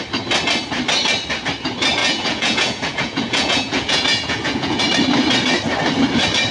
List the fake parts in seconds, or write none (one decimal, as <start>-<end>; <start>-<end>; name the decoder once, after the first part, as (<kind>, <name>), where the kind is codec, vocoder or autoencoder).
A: 2.0-4.8 (vocoder, Vocos)